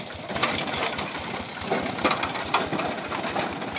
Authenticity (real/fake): real